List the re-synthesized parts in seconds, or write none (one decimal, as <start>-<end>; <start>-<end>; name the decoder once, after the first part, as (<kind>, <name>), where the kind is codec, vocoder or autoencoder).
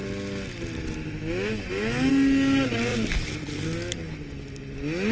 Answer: 2.9-3.6 (vocoder, BigVGAN v2)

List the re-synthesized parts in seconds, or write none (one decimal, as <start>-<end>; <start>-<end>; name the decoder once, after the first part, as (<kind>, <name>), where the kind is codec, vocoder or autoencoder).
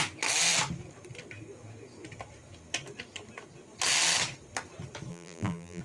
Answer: 5.1-5.8 (vocoder, BigVGAN v2)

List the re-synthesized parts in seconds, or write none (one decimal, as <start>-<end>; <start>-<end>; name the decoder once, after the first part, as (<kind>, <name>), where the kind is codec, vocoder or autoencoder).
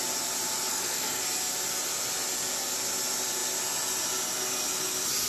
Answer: 0.7-1.2 (codec, SNAC)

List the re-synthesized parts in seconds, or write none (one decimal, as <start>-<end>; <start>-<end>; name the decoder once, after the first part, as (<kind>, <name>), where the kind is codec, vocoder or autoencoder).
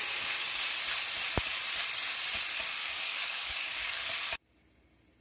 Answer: 2.8-4.1 (codec, DAC)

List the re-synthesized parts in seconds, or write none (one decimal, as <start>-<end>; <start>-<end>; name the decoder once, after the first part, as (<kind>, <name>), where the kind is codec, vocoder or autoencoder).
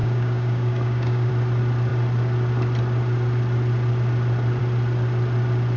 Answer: 0.0-1.3 (codec, DAC)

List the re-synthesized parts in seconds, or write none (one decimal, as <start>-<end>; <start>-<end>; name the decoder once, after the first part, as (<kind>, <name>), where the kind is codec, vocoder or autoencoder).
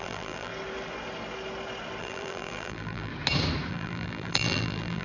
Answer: 0.0-0.5 (vocoder, BigVGAN v2); 2.0-3.1; 3.7-5.0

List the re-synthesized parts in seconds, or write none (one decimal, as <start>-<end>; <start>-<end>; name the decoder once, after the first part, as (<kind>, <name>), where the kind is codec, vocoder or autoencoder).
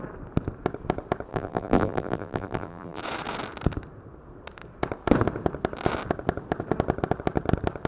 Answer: 1.3-3.0 (vocoder, BigVGAN v2)